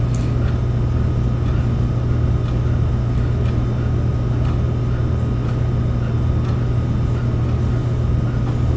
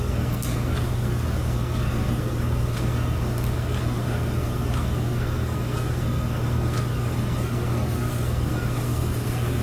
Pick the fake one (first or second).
second